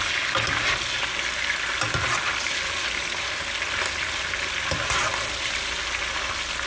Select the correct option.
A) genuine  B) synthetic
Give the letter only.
A